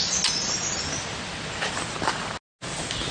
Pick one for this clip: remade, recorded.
recorded